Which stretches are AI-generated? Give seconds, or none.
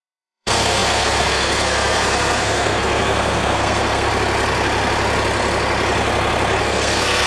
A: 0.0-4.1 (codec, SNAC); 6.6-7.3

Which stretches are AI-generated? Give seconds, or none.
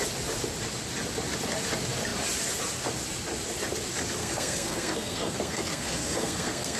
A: 4.2-6.8 (codec, SNAC)